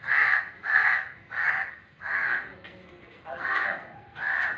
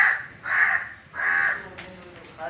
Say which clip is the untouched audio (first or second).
second